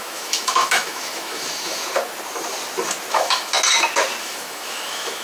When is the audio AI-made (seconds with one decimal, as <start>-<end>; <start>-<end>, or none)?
0.0-1.8; 3.1-3.5; 4.2-5.2